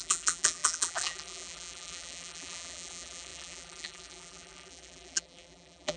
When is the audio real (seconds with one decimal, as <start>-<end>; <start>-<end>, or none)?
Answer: none